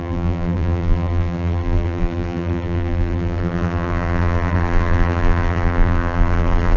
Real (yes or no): no